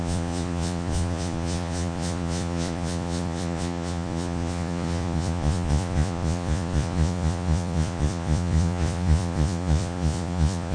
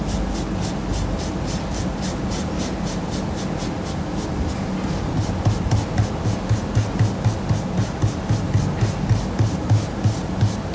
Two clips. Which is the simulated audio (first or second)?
first